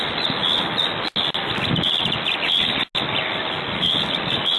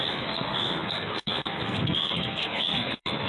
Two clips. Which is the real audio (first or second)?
first